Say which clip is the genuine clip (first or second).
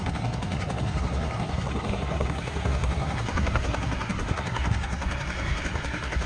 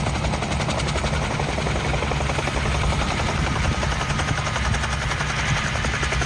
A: second